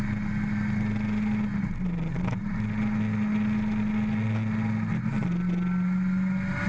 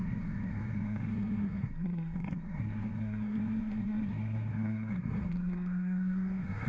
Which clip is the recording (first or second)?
first